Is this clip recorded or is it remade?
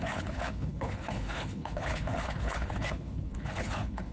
remade